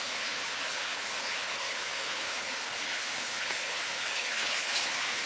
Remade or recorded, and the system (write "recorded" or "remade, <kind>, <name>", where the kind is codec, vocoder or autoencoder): remade, codec, HILCodec